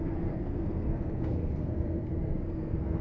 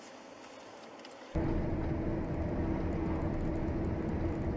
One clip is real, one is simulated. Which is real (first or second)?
second